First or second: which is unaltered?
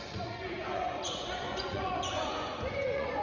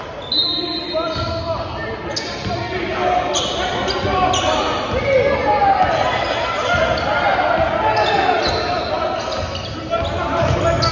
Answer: second